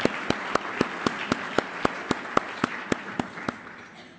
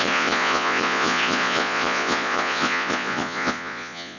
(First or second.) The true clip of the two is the first